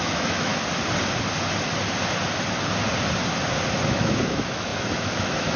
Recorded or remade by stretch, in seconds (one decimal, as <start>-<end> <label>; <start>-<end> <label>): 0.0-0.5 remade; 0.5-3.7 recorded; 3.7-5.6 remade